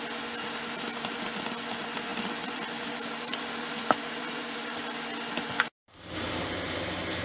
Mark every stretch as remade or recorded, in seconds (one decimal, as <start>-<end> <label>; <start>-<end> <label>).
0.0-2.1 recorded; 2.1-4.8 remade; 4.8-7.2 recorded